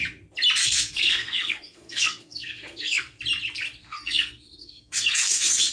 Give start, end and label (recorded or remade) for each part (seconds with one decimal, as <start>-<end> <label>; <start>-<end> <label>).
0.0-0.6 recorded; 0.6-3.2 remade; 3.2-3.8 recorded; 3.8-5.7 remade